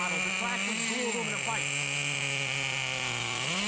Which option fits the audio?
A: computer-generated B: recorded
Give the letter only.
B